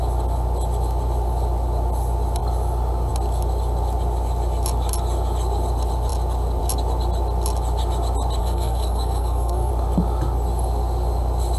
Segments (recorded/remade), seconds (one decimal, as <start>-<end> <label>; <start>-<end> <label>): 0.0-8.4 recorded; 8.4-9.7 remade; 9.7-11.6 recorded